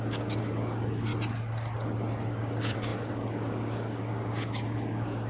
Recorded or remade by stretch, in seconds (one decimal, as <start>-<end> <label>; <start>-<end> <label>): 0.0-1.1 remade; 1.1-2.3 recorded; 2.3-5.3 remade